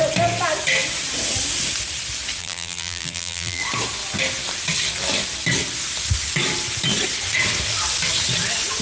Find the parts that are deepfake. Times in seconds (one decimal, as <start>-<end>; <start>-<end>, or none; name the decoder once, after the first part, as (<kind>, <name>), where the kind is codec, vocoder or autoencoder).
2.4-3.6 (vocoder, BigVGAN v2)